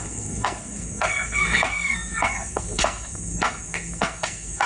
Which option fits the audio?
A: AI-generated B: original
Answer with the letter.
A